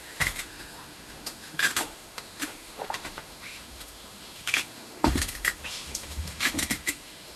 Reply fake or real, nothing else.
fake